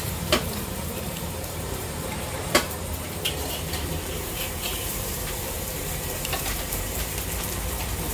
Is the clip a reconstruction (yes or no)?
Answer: yes